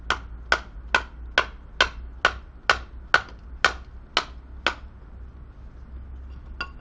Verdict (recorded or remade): recorded